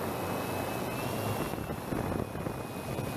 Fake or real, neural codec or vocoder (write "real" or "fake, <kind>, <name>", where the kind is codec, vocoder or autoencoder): real